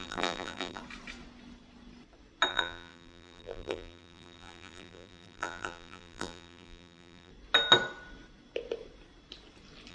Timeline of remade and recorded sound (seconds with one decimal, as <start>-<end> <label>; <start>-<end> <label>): 0.0-0.8 remade; 0.8-2.5 recorded; 2.5-7.3 remade; 7.3-9.9 recorded